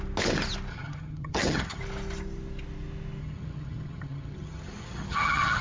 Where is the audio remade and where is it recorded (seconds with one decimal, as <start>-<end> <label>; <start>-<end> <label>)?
0.0-0.7 recorded; 0.7-1.8 remade; 1.8-3.2 recorded; 3.2-5.6 remade